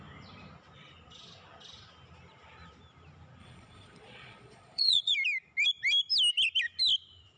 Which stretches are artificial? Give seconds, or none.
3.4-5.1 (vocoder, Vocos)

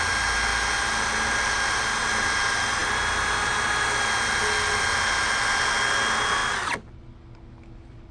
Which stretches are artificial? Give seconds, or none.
none

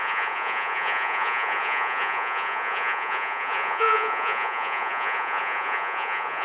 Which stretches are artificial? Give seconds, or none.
0.0-6.4 (vocoder, Vocos)

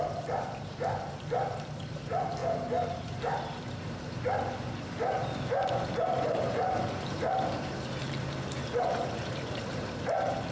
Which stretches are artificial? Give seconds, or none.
0.0-10.5 (vocoder, BigVGAN v2)

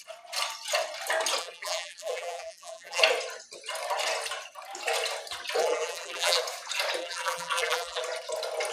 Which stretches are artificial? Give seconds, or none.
1.4-3.0 (vocoder, BigVGAN v2); 5.6-6.4; 7.0-8.0

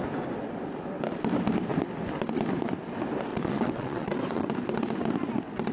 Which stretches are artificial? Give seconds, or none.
3.3-4.5 (vocoder, WaveNeXt)